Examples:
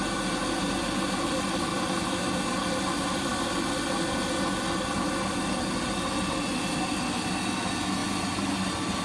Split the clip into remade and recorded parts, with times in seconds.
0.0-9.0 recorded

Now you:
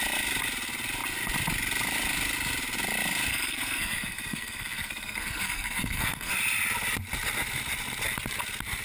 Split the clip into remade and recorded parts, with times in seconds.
0.0-3.3 recorded; 3.3-6.3 remade; 6.3-8.8 recorded